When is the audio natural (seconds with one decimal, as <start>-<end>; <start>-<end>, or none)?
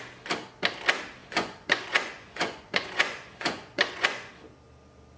0.0-1.2; 4.3-5.2